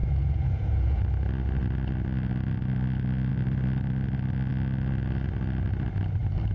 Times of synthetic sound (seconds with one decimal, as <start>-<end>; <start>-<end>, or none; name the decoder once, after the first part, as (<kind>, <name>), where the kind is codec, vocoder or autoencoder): 0.0-1.0 (vocoder, Vocos)